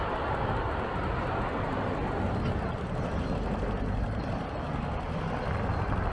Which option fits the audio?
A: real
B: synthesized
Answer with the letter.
A